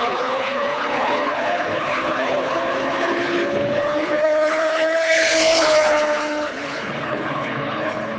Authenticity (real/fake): fake